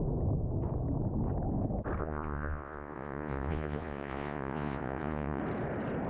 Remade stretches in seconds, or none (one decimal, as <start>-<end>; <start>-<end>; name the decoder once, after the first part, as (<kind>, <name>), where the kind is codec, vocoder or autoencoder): 2.0-5.4 (vocoder, Vocos)